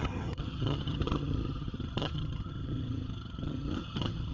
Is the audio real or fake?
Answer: fake